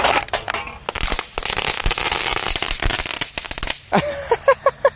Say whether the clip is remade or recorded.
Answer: recorded